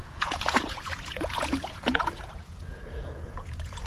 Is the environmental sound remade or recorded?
remade